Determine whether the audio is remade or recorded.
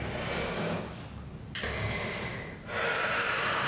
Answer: recorded